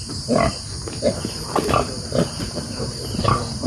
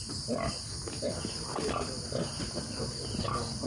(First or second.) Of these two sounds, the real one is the second